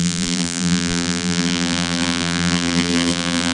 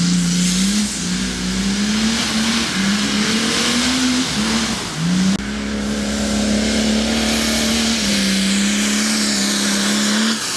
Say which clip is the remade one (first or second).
first